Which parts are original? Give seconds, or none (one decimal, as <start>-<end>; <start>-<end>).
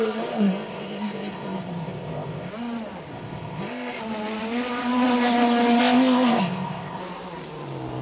2.5-3.1; 4.0-5.8; 7.0-8.0